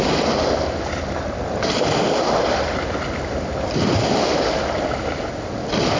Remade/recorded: recorded